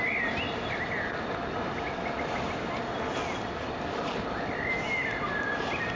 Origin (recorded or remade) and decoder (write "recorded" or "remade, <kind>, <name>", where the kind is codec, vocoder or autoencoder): recorded